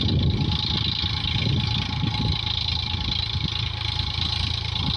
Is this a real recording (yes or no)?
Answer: yes